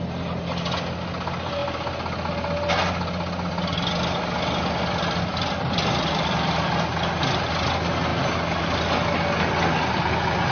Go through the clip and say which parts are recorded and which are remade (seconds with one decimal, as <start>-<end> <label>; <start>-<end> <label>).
0.0-10.5 recorded